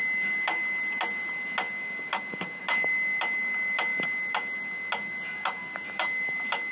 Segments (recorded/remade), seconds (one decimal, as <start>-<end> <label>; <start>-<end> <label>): 0.0-6.7 recorded